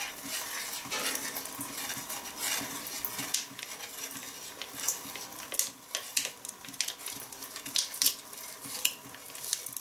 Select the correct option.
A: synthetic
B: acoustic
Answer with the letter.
B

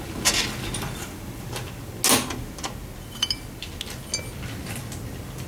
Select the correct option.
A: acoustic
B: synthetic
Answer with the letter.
A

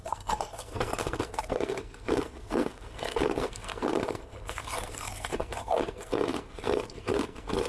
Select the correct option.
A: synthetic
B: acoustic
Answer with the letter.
A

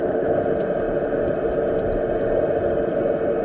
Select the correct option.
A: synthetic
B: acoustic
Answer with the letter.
B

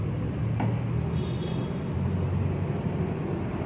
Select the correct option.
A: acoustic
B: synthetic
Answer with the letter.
A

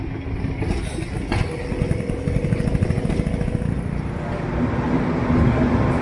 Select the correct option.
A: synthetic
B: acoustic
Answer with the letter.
B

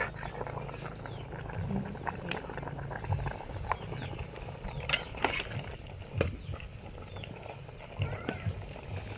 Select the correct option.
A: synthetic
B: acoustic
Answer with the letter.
B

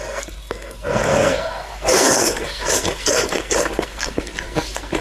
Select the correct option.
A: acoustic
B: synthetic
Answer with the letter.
B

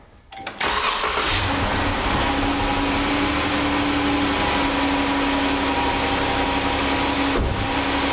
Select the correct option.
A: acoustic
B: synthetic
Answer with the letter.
A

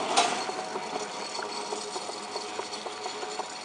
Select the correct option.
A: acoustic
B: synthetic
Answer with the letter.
A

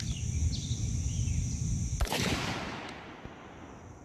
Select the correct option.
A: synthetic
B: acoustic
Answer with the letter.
B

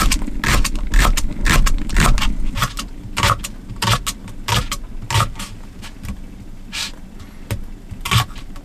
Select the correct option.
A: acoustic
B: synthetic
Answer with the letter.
A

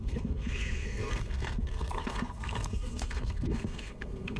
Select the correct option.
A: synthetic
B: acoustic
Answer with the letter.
A